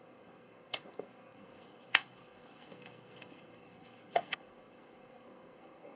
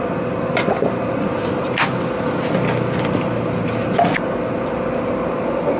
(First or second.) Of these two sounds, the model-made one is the first